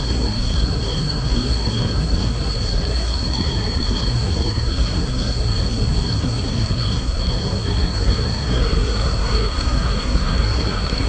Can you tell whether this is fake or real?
fake